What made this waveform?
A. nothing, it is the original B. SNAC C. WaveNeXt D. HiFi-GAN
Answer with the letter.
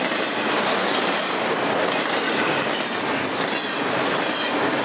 A